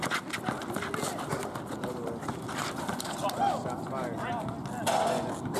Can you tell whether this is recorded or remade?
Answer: recorded